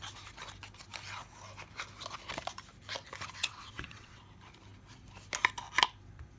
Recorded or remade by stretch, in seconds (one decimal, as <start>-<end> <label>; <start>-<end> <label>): 0.0-3.4 recorded; 3.4-4.2 remade; 4.2-6.4 recorded